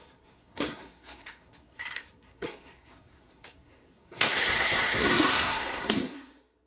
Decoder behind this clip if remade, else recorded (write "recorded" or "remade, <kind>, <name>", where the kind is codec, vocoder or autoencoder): remade, codec, SNAC